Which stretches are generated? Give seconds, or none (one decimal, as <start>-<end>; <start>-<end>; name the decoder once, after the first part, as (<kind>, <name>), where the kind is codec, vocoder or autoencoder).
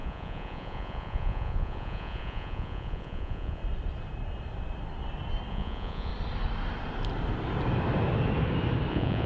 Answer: 0.0-3.6 (vocoder, Vocos); 5.5-6.1; 8.9-9.3